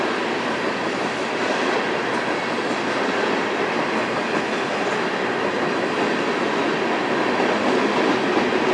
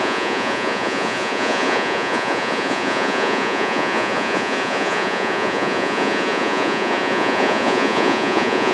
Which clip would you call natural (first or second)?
first